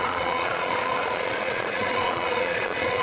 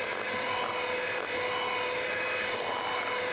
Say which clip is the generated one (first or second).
first